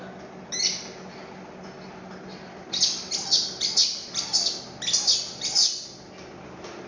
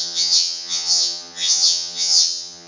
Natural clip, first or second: first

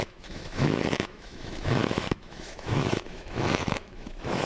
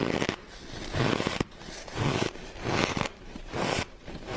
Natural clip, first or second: second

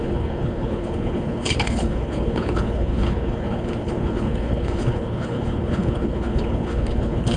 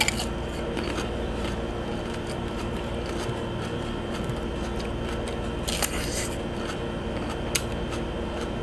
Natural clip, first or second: second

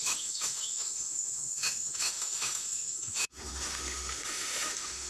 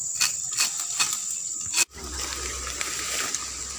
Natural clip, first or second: second